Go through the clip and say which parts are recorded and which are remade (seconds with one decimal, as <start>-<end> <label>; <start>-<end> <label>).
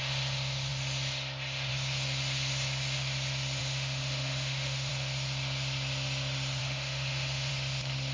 0.0-3.6 recorded; 3.6-4.9 remade; 4.9-6.6 recorded; 6.6-7.5 remade; 7.5-8.1 recorded